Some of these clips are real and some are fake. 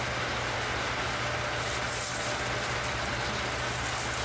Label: real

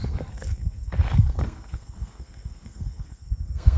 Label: fake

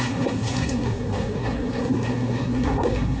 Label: fake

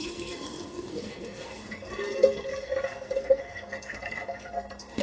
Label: fake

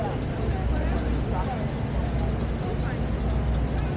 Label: real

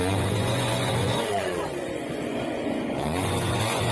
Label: fake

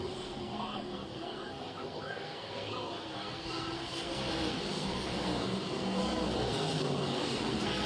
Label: fake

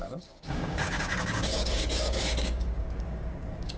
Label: fake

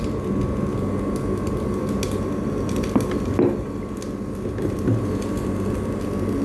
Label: real